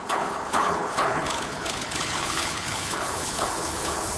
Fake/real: fake